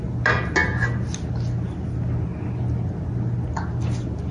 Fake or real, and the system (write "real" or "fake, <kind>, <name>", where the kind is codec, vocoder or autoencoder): real